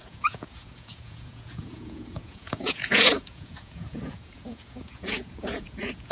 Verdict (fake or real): fake